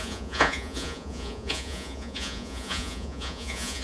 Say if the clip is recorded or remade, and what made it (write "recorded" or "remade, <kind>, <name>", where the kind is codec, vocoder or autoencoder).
remade, vocoder, Vocos